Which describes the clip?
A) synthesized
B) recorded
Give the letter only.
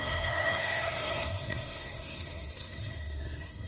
A